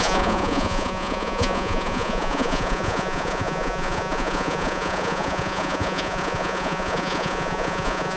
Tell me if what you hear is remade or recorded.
remade